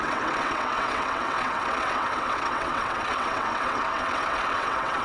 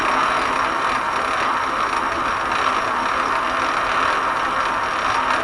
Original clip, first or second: second